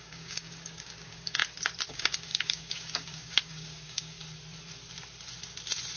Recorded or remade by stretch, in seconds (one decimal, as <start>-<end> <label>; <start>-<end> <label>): 0.0-1.4 remade; 1.4-1.9 recorded; 1.9-4.2 remade; 4.2-6.0 recorded